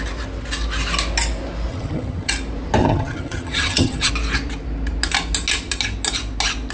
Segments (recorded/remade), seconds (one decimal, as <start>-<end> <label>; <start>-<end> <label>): 0.0-1.7 recorded; 1.7-2.3 remade; 2.3-2.8 recorded; 2.8-4.1 remade; 4.1-6.7 recorded